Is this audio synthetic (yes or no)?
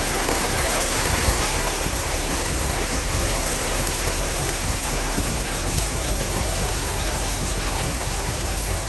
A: yes